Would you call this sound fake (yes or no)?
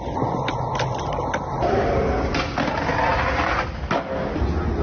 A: no